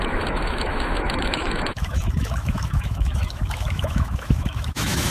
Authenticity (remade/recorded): remade